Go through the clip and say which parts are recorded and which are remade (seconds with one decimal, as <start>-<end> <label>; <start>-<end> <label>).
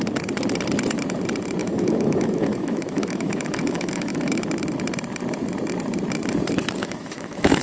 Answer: 0.0-1.6 recorded; 1.6-4.4 remade; 4.4-6.8 recorded; 6.8-7.6 remade